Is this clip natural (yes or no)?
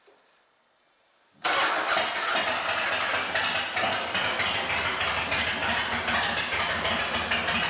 yes